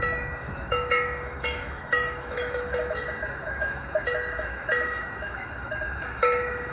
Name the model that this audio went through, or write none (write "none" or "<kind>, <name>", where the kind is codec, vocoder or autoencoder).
autoencoder, DAC-VAE